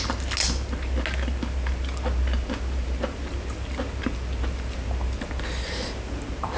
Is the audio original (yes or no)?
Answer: yes